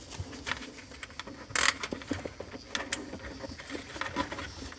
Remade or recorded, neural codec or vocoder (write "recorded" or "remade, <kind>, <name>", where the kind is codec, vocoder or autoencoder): recorded